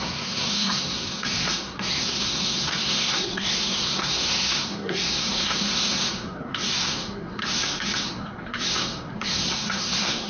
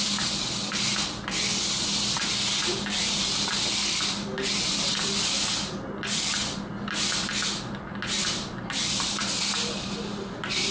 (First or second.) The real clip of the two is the second